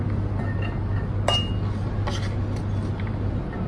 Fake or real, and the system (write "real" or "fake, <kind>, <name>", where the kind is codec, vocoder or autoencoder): real